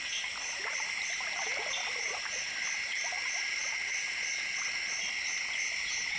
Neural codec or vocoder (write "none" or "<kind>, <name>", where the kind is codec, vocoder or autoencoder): none